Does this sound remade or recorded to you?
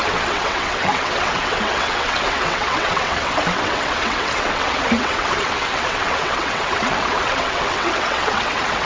remade